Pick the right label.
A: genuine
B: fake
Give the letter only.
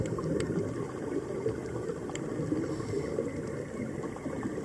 A